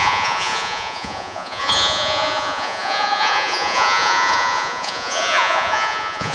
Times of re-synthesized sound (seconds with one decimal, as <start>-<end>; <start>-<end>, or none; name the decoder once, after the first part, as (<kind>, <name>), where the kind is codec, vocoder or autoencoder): 0.0-6.3 (vocoder, Vocos)

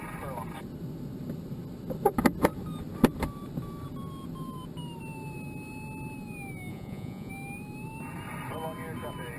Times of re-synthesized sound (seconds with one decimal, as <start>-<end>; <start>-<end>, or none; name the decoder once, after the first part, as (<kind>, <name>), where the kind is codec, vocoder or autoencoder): 6.7-7.3 (vocoder, Vocos)

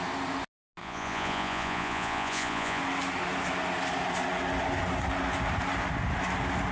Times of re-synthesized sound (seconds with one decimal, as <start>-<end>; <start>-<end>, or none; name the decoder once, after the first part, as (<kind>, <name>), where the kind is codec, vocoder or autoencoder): 0.8-2.8 (vocoder, Vocos)

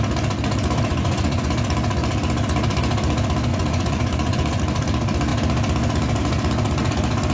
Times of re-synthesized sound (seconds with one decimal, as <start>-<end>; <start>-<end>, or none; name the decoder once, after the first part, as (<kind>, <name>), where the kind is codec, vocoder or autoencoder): 0.9-1.5 (vocoder, Vocos); 3.5-4.6

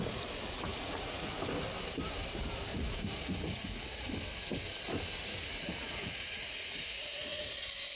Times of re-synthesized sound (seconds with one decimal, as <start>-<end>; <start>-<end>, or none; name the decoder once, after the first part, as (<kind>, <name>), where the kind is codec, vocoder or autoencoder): 0.7-1.3 (vocoder, Vocos); 2.7-4.0; 5.2-7.5

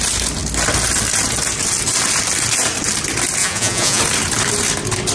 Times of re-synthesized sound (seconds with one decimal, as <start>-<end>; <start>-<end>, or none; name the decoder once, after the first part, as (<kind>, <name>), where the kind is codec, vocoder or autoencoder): 3.4-4.0 (vocoder, Vocos)